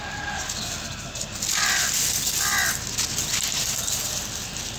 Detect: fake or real real